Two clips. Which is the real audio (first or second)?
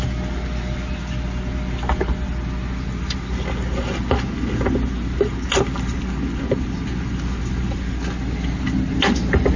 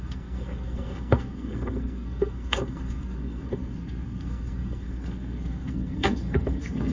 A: first